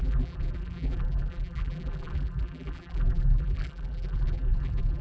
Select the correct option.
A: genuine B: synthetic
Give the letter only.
B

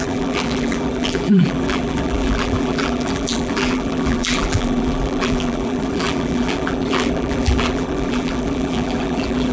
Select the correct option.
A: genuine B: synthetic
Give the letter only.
B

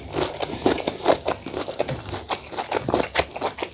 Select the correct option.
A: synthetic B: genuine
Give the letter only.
B